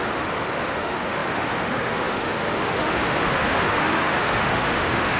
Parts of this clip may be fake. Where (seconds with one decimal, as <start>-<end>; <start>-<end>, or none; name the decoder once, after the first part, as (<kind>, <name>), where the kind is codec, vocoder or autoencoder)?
0.0-5.2 (autoencoder, DAC-VAE)